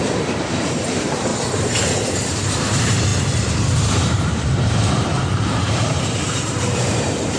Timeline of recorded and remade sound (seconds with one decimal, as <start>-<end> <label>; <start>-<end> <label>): 0.0-1.3 remade; 1.3-2.1 recorded; 2.1-7.4 remade